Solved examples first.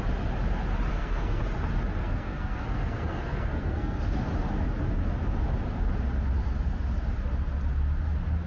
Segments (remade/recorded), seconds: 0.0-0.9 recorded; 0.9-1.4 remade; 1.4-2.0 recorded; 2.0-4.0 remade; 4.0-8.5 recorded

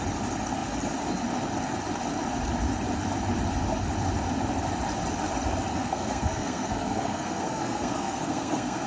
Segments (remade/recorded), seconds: 0.0-5.7 recorded; 5.7-8.9 remade

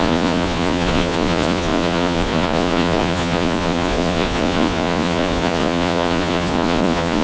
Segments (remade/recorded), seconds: 0.0-7.2 remade

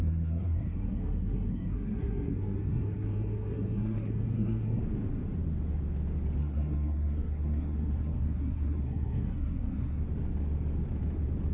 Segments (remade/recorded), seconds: 0.0-4.8 remade; 4.8-6.4 recorded; 6.4-10.0 remade; 10.0-11.5 recorded

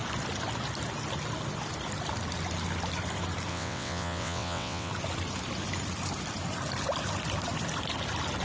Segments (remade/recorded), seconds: 0.0-3.5 recorded; 3.5-4.9 remade; 4.9-8.4 recorded

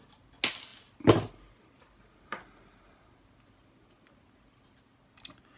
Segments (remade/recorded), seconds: 0.0-5.6 recorded